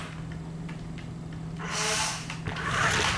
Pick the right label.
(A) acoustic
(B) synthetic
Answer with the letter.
A